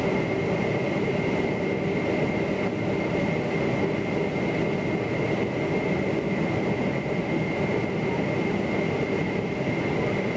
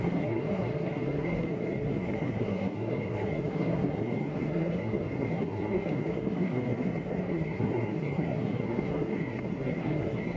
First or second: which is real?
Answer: first